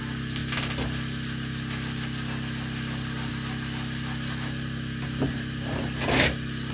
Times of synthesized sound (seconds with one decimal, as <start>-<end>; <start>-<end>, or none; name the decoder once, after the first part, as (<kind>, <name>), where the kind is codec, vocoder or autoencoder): none